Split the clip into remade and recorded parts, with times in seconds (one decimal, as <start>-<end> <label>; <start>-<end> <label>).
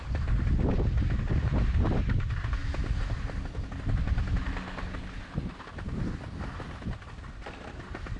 0.0-8.2 recorded